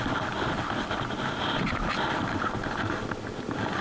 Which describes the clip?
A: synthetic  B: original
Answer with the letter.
B